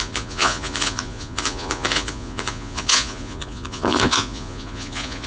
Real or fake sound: fake